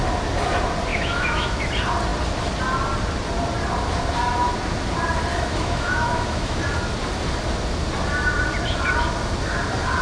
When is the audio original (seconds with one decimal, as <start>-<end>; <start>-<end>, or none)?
0.0-0.9; 1.6-5.3; 6.6-10.0